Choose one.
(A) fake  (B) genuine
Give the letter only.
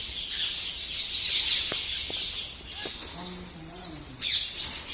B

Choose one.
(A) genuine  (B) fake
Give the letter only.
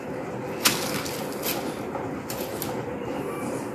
A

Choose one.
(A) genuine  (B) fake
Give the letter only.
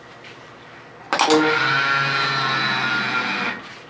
A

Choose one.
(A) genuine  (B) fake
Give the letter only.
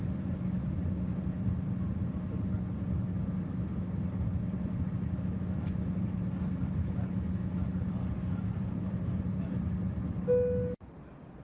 A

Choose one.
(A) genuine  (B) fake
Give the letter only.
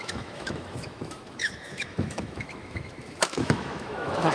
B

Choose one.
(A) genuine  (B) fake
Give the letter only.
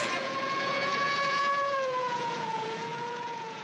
B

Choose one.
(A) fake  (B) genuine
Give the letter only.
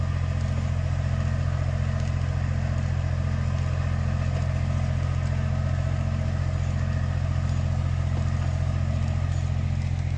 B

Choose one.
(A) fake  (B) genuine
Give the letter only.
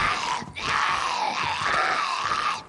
B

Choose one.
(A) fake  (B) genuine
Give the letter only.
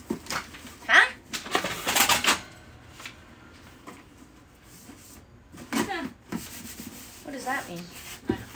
B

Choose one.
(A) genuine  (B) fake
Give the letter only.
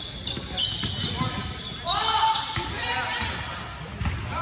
A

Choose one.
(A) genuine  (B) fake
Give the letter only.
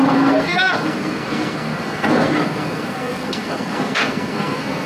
B